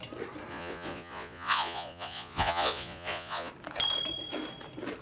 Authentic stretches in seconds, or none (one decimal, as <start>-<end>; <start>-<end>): 0.0-0.5; 3.5-5.0